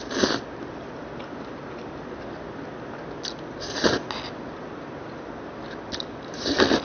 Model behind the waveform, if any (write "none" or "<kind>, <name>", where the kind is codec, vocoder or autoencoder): none